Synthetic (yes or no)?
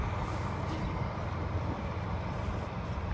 no